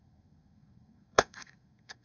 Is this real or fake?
fake